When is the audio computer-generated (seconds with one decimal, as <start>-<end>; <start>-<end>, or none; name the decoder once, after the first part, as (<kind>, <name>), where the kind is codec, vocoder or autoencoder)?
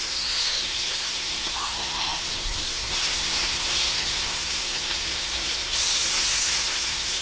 0.0-7.2 (codec, SNAC)